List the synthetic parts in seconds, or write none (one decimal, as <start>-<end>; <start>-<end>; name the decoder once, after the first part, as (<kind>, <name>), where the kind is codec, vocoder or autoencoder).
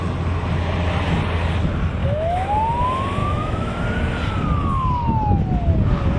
2.0-2.5 (autoencoder, DAC-VAE); 3.2-3.8